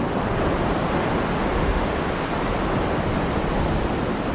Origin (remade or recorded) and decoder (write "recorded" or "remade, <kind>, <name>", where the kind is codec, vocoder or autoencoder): recorded